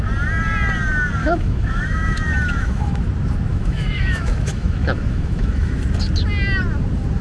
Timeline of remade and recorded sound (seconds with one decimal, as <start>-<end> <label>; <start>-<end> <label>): 0.0-1.2 recorded; 1.2-3.0 remade; 3.0-3.5 recorded; 3.5-5.8 remade; 5.8-7.2 recorded